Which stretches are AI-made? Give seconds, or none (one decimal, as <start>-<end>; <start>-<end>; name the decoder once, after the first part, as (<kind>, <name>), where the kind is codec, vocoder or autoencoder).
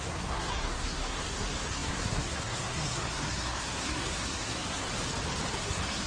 0.0-4.9 (codec, SNAC); 5.5-6.1